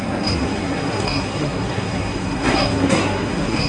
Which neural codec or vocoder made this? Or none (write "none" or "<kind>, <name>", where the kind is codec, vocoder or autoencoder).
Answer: codec, SNAC